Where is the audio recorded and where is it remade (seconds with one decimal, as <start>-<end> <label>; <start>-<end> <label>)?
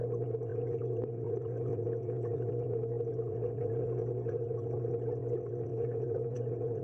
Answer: 0.0-0.5 recorded; 0.5-2.5 remade; 2.5-3.3 recorded; 3.3-4.9 remade; 4.9-5.7 recorded; 5.7-6.8 remade